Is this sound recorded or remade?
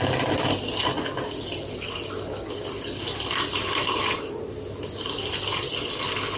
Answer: recorded